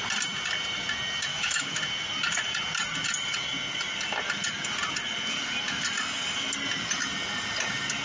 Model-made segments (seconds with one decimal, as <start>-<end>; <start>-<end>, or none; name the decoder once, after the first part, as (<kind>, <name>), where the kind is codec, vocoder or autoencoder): 1.3-1.8 (autoencoder, DAC-VAE)